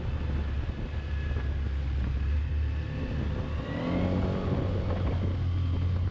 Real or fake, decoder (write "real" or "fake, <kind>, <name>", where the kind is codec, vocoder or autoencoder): real